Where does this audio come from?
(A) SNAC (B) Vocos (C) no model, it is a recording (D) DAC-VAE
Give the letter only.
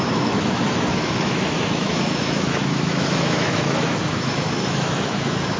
D